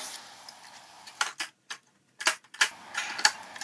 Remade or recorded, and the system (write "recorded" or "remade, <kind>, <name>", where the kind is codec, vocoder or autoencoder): recorded